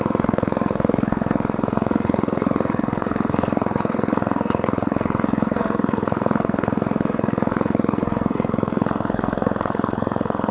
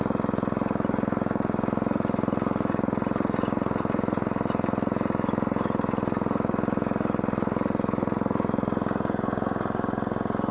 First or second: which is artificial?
first